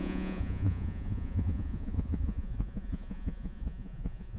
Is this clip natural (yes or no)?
no